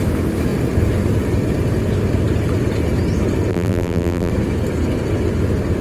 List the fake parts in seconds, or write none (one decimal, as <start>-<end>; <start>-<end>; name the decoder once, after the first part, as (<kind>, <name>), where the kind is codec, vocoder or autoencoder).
3.5-4.3 (vocoder, BigVGAN v2)